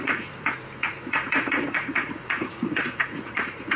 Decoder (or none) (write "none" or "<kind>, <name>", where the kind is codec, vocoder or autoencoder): vocoder, Vocos